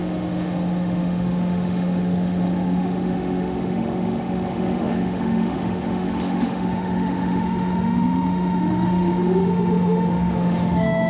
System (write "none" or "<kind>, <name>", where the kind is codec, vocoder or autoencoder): autoencoder, DAC-VAE